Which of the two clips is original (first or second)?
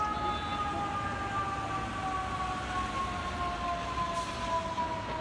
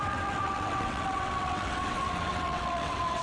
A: first